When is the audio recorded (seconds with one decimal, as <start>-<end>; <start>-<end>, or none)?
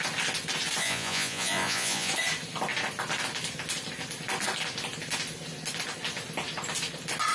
0.0-0.8; 2.1-7.3